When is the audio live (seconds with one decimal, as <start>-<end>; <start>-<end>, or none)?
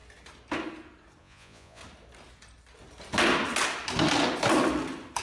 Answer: 0.0-1.2; 1.8-5.2